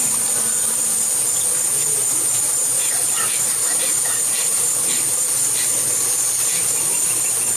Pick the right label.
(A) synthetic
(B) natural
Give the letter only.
B